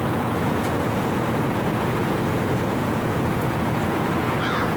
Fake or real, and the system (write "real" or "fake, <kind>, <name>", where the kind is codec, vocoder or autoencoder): fake, vocoder, Vocos